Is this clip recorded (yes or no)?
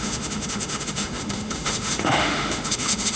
no